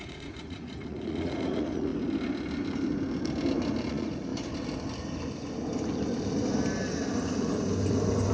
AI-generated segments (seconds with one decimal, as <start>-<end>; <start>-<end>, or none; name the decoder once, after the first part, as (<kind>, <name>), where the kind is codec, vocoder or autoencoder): 0.0-1.9 (vocoder, Vocos); 3.9-4.3